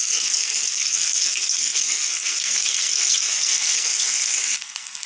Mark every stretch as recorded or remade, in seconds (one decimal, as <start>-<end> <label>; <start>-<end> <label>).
0.0-5.1 remade